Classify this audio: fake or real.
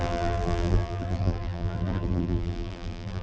fake